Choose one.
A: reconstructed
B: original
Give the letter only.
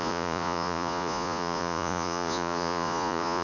A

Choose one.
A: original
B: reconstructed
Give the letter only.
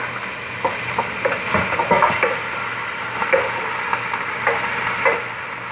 A